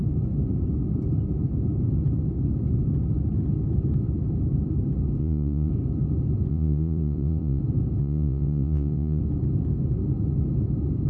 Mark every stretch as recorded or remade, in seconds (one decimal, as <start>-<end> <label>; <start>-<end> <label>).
0.0-5.2 recorded; 5.2-5.7 remade; 5.7-6.5 recorded; 6.5-7.6 remade; 7.6-8.0 recorded; 8.0-9.2 remade; 9.2-11.1 recorded